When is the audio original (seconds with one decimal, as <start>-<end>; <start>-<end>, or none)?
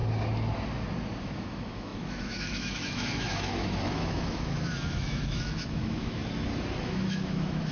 0.0-1.2; 6.2-6.8